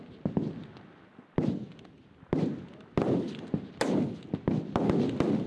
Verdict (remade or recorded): recorded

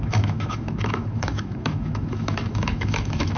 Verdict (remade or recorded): remade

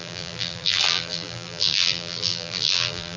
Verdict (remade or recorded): remade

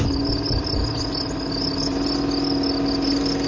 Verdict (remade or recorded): recorded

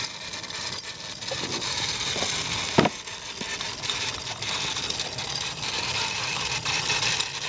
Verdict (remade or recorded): recorded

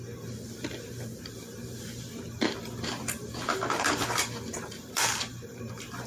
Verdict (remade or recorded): remade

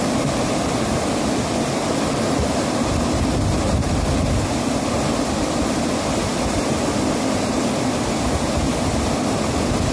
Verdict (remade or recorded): recorded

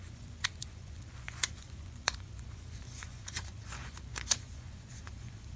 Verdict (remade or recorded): remade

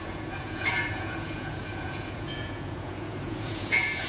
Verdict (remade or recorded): remade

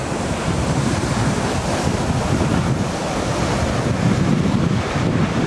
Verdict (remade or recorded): recorded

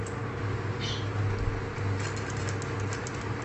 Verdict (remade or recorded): recorded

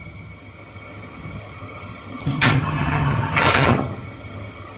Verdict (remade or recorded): remade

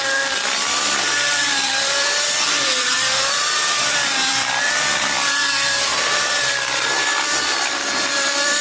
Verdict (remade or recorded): remade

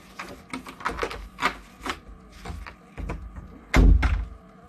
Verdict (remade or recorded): recorded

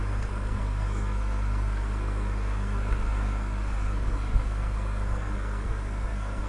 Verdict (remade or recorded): remade